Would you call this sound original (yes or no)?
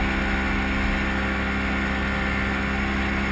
yes